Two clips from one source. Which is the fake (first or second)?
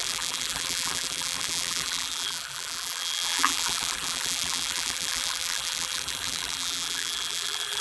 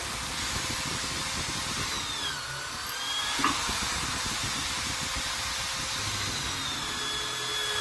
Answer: first